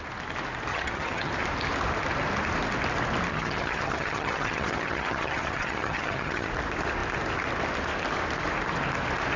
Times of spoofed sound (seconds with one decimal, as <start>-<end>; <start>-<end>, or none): 0.7-1.3; 3.3-6.5